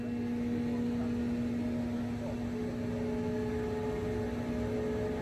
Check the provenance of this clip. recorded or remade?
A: recorded